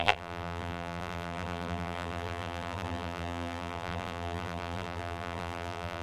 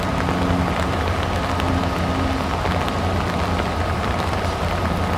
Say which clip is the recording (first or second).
second